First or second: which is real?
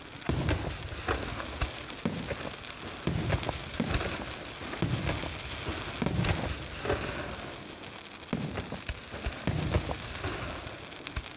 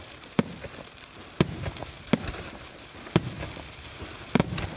first